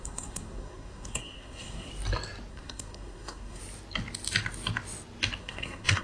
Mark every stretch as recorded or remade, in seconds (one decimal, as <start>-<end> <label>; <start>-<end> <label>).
0.0-1.9 remade; 1.9-2.5 recorded; 2.5-3.6 remade; 3.6-5.4 recorded; 5.4-6.0 remade